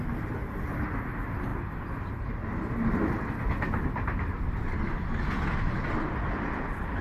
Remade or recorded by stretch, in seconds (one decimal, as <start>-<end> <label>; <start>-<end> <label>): 0.0-7.0 recorded